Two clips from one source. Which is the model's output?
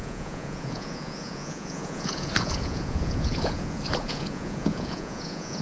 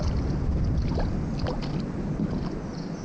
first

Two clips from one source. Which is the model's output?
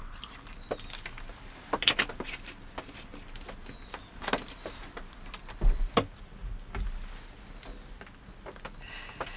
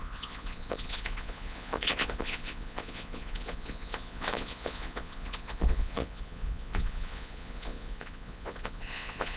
second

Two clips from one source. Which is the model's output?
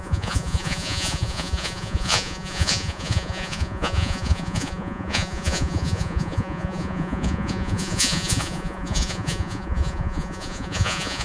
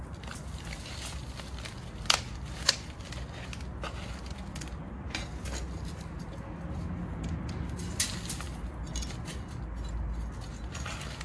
first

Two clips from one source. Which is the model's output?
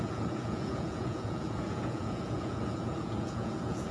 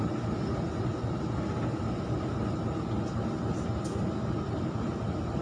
first